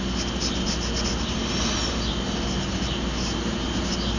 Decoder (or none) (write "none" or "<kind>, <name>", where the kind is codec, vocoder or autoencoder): none